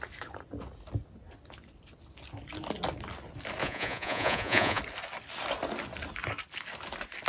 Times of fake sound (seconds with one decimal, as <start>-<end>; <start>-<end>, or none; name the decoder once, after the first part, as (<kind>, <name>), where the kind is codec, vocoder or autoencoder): 3.6-4.8 (vocoder, Vocos)